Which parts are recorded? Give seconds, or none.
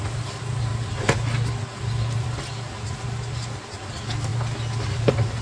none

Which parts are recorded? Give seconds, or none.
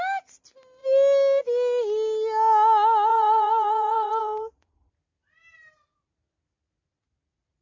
0.0-3.1; 4.9-7.6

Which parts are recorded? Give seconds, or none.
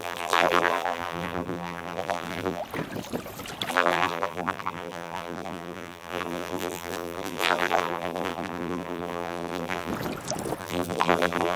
2.6-3.7; 9.9-10.6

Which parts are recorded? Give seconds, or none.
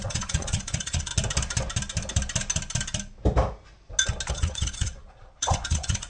1.1-4.3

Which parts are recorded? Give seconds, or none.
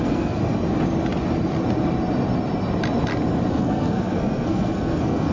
0.4-3.5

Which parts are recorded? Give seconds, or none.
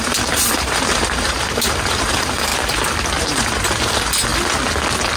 2.5-3.2; 4.3-5.2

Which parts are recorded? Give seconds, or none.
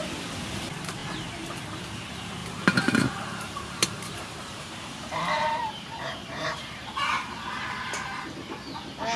0.0-2.4; 7.6-9.2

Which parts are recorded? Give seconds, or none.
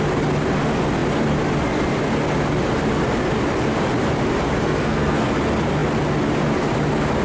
0.0-4.6; 5.3-7.2